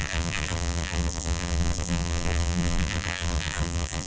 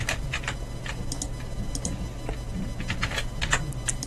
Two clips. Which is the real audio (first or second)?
second